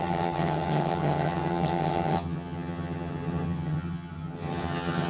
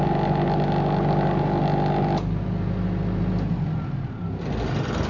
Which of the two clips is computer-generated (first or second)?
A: first